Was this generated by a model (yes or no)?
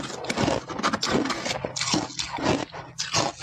no